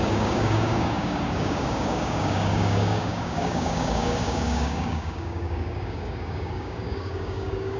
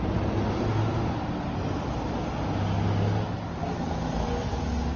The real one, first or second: second